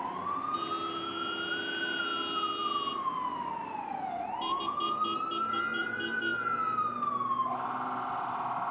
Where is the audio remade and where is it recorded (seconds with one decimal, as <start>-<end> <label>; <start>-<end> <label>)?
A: 0.0-8.7 recorded